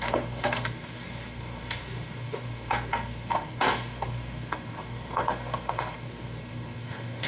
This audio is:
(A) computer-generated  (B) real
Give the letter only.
A